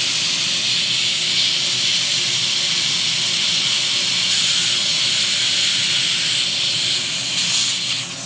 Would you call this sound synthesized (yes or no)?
no